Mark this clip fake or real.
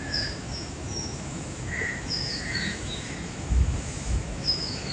fake